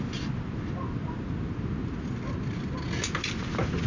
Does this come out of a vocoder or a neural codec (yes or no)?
no